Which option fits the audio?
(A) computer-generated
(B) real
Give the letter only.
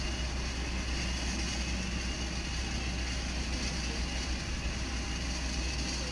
B